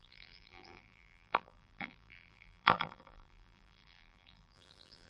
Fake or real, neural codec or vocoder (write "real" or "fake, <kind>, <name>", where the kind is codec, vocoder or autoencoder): fake, vocoder, BigVGAN v2